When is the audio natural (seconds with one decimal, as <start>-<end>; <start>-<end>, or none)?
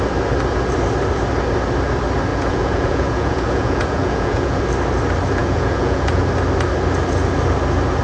0.0-2.3; 4.6-5.4; 6.2-8.0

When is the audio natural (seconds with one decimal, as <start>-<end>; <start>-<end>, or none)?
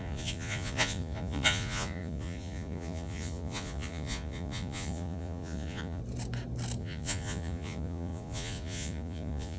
6.0-6.8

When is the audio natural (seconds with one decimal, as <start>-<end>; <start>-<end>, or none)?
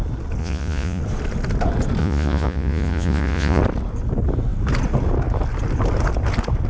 0.0-0.4; 1.0-2.0; 3.6-6.7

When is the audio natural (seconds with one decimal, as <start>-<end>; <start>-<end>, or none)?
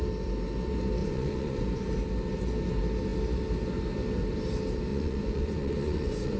0.0-1.0; 1.8-4.9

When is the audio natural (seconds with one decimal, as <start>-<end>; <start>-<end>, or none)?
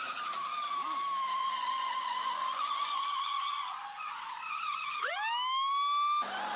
0.0-1.4; 5.1-6.6